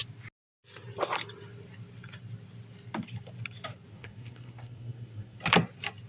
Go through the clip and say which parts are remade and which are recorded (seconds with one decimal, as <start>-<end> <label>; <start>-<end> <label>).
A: 0.0-3.9 recorded; 3.9-5.4 remade; 5.4-6.1 recorded